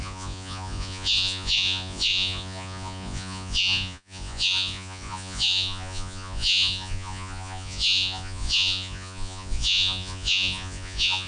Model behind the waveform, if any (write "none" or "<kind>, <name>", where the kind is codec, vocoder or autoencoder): vocoder, Vocos